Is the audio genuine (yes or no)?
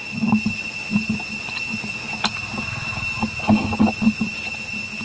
yes